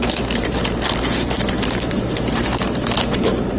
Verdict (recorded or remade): remade